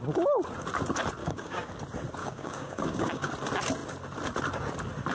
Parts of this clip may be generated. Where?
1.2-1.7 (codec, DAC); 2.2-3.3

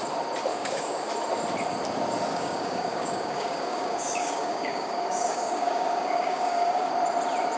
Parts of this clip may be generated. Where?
0.5-1.1 (codec, DAC); 2.3-6.9

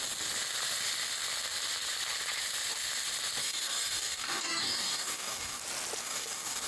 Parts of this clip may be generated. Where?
3.4-5.6 (codec, DAC); 6.0-6.7